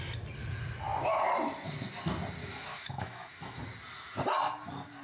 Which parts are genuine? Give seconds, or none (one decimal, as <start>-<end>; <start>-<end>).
0.0-2.4; 3.6-5.0